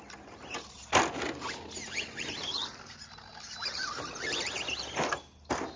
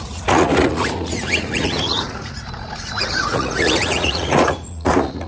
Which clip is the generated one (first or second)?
second